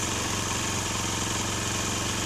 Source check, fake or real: fake